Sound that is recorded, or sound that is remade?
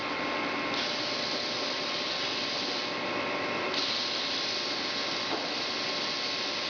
recorded